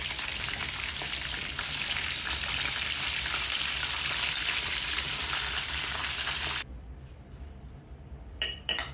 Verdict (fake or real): fake